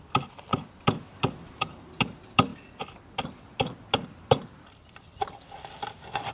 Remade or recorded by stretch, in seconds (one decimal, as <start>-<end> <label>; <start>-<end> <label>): 0.0-6.3 remade

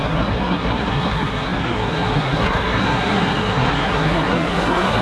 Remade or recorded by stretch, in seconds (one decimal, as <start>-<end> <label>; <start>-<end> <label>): 0.0-5.0 remade

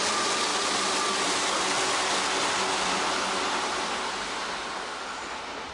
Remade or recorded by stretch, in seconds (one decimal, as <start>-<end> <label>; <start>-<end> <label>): 0.0-5.7 recorded

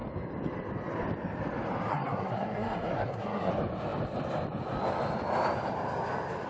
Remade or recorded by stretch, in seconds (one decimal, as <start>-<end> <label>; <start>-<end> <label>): 0.0-1.9 recorded; 1.9-3.5 remade; 3.5-6.5 recorded

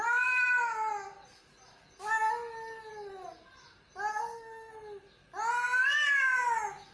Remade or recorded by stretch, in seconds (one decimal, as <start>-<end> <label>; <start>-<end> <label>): 0.0-4.1 recorded; 4.1-4.7 remade; 4.7-6.9 recorded

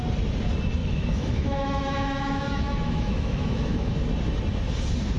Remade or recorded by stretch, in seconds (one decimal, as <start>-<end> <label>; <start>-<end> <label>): 0.0-0.8 recorded; 0.8-3.9 remade; 3.9-5.2 recorded

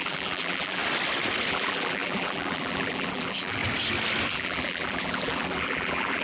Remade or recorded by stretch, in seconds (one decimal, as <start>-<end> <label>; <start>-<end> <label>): 0.0-0.8 remade; 0.8-1.5 recorded; 1.5-3.6 remade; 3.6-4.3 recorded; 4.3-6.2 remade